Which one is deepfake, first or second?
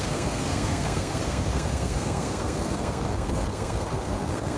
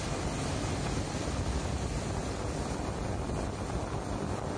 first